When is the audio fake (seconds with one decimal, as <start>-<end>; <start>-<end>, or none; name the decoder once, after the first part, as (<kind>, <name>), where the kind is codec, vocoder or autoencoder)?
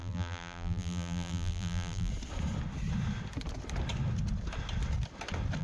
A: 0.0-2.1 (vocoder, BigVGAN v2)